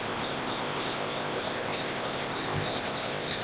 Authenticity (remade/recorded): remade